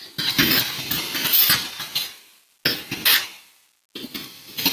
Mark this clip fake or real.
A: real